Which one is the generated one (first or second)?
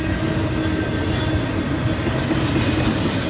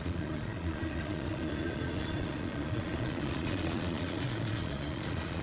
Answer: second